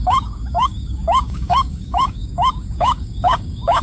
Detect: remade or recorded remade